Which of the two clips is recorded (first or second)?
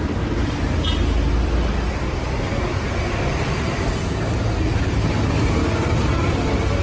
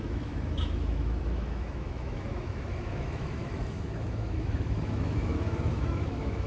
first